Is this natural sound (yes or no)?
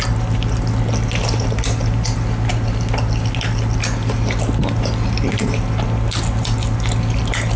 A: yes